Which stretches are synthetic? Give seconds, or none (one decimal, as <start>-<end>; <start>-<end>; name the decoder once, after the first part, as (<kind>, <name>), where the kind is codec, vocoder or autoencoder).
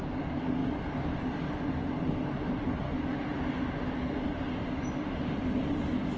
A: none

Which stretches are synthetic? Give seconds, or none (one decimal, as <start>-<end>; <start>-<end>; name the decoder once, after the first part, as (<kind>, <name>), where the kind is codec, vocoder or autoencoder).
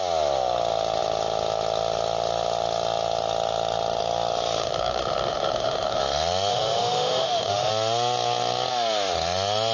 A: 4.6-6.0 (autoencoder, DAC-VAE); 6.5-7.7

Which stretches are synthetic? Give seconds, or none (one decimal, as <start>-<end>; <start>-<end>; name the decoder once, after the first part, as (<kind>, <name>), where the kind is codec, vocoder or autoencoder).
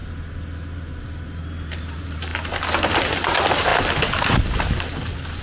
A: 0.7-2.3 (vocoder, BigVGAN v2); 3.0-3.7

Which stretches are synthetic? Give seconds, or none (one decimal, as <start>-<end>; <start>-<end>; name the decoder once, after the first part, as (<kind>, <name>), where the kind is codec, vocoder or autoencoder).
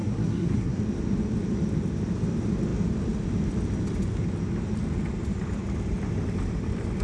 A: 0.0-0.8 (codec, SNAC)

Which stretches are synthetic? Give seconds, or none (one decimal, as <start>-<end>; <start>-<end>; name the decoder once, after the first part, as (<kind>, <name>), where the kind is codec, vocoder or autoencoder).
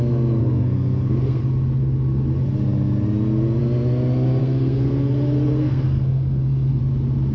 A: 0.4-1.4 (codec, SNAC); 4.4-6.8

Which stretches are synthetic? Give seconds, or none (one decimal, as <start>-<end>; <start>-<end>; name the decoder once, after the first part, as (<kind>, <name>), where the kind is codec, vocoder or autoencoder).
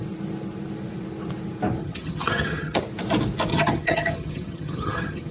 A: 1.8-2.8 (vocoder, HiFi-GAN); 3.5-5.3